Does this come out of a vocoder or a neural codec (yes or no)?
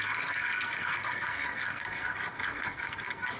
yes